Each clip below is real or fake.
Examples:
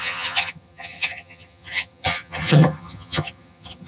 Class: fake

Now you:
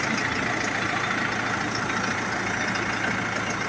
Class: real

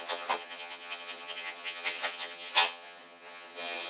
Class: fake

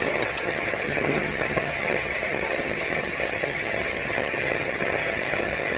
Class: fake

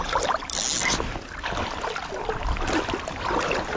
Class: real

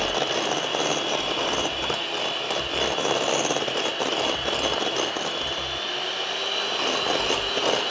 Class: real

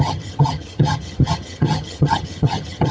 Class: fake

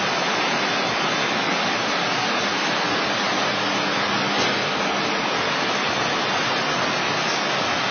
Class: real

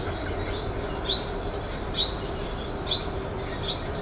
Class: real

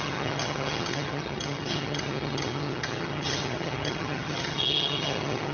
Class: fake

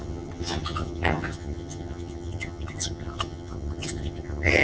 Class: fake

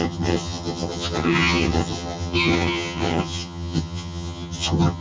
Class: fake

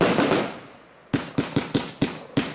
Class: real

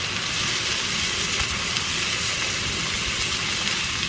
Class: real